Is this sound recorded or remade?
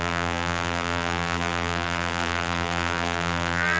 remade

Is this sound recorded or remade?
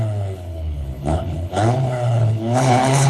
remade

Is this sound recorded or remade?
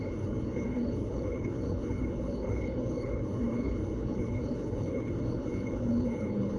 remade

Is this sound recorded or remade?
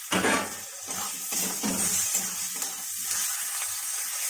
recorded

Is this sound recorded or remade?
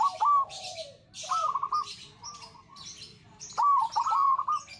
recorded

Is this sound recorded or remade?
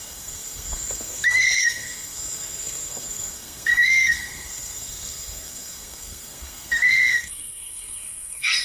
remade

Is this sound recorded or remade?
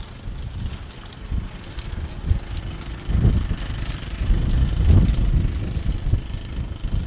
recorded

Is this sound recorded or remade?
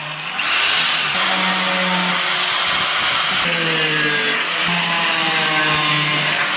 recorded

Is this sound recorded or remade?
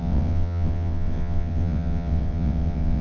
remade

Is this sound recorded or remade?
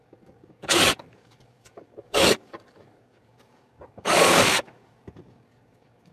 remade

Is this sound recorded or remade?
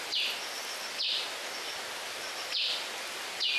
recorded